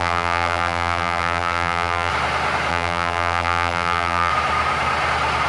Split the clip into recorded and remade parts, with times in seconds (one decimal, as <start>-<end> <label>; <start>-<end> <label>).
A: 0.0-2.1 remade; 2.1-2.7 recorded; 2.7-4.3 remade; 4.3-5.5 recorded